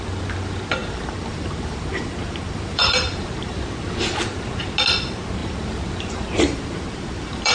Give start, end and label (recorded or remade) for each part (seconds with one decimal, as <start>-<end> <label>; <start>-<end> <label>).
0.0-0.8 recorded; 0.8-3.6 remade; 3.6-5.4 recorded; 5.4-7.5 remade